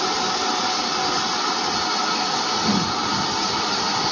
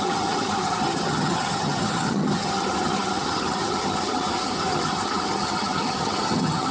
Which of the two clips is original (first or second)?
first